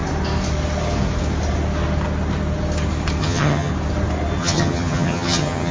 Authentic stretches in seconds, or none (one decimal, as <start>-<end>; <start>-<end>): 0.0-3.2; 3.7-4.4